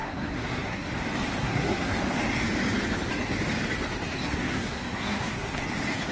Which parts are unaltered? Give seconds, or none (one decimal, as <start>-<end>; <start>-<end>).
0.9-1.4; 1.9-4.2; 5.6-6.1